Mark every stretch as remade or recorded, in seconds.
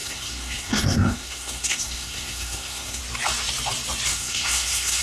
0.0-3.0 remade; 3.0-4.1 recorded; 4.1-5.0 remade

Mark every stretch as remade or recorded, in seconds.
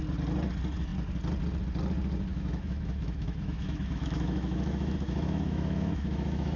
0.0-2.3 recorded; 2.3-6.6 remade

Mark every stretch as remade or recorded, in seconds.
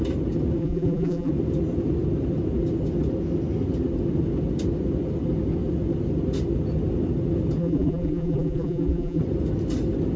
0.0-0.6 recorded; 0.6-1.3 remade; 1.3-7.6 recorded; 7.6-9.2 remade; 9.2-10.2 recorded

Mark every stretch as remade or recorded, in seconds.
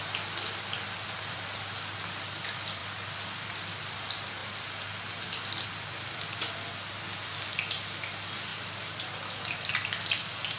0.0-2.8 recorded; 2.8-3.8 remade; 3.8-8.5 recorded; 8.5-9.0 remade; 9.0-10.6 recorded